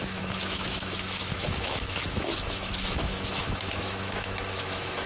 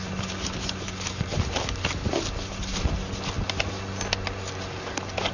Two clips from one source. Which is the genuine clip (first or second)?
second